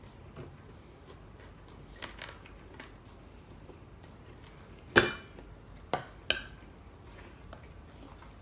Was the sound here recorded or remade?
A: recorded